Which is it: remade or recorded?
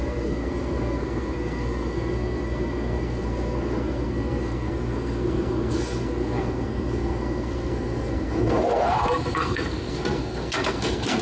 remade